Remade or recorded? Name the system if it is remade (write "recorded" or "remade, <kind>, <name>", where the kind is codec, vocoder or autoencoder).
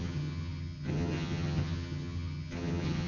remade, vocoder, HiFi-GAN